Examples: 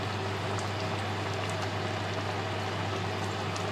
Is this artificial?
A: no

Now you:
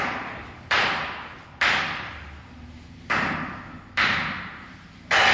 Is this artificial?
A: no